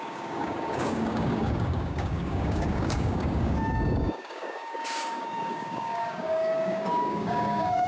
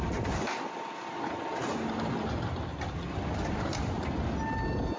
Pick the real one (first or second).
second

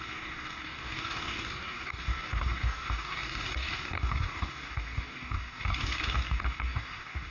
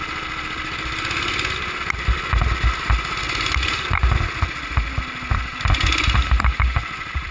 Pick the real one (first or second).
second